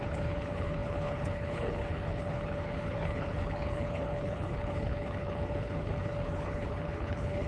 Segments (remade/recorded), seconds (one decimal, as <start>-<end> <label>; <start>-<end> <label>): 0.0-7.5 remade